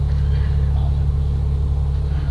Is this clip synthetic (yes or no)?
no